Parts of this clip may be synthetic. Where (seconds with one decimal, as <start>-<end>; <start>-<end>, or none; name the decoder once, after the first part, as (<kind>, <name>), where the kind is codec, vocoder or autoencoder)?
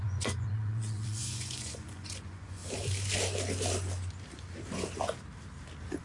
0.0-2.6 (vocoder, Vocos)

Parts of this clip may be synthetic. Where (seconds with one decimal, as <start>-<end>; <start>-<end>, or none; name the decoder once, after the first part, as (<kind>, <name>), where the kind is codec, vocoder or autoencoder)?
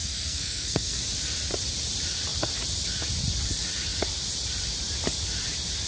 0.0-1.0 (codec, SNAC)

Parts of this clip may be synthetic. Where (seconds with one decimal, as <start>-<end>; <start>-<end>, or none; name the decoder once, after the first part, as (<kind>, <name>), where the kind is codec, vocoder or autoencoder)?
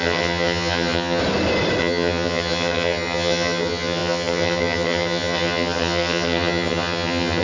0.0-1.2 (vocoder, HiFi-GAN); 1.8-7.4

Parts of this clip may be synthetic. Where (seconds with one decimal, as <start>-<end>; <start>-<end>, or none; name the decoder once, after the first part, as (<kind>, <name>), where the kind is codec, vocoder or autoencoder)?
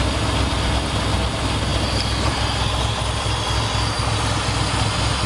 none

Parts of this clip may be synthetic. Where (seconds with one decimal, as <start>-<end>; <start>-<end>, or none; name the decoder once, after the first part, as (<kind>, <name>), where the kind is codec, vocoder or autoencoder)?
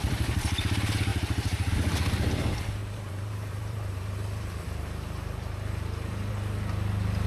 1.1-1.7 (vocoder, BigVGAN v2); 2.8-6.3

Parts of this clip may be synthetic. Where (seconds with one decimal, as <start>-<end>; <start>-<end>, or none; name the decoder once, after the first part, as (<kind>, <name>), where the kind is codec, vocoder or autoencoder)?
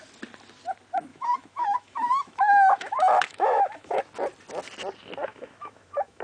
1.1-4.0 (autoencoder, DAC-VAE); 5.3-6.2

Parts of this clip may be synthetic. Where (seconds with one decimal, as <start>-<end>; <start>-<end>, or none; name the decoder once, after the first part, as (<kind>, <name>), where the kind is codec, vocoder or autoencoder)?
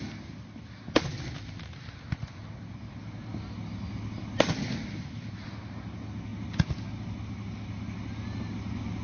none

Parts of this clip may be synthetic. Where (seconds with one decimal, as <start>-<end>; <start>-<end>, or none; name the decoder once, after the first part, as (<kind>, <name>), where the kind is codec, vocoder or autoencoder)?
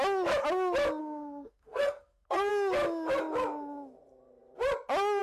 1.0-2.5 (codec, SNAC)